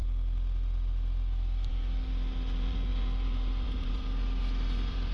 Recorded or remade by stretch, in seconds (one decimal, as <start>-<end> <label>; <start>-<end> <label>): 0.0-1.7 recorded; 1.7-5.1 remade